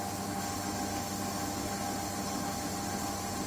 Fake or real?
real